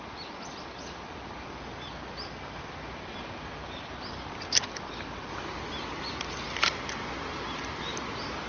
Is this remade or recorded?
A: recorded